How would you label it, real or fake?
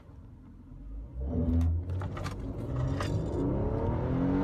real